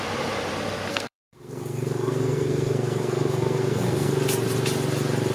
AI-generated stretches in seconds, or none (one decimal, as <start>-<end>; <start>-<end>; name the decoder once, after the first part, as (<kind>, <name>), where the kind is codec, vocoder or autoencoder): 0.9-4.1 (codec, SNAC)